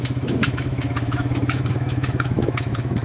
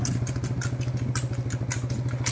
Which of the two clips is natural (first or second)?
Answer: second